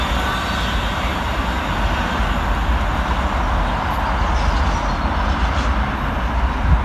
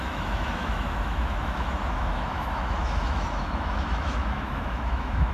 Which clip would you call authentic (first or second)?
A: first